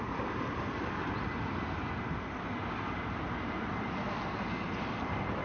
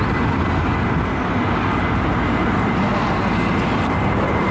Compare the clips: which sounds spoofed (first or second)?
first